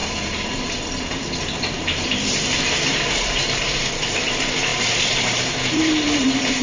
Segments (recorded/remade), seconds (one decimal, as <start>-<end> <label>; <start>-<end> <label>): 0.0-6.6 remade